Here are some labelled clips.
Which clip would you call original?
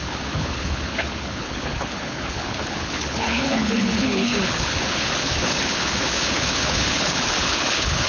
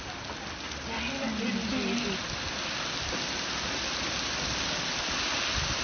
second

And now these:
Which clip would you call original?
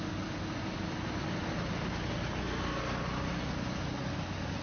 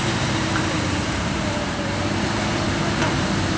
first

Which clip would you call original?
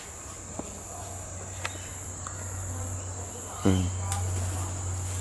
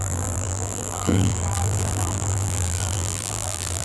first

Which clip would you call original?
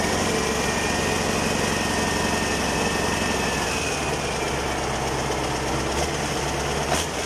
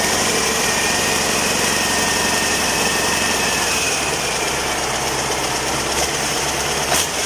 first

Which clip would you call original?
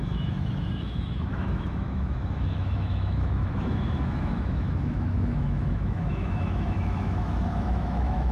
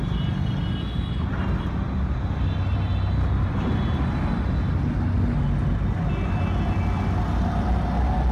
second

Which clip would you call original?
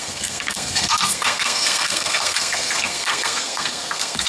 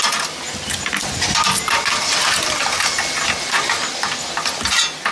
second